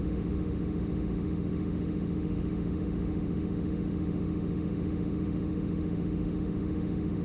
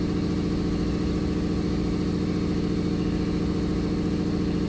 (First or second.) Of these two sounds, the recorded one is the second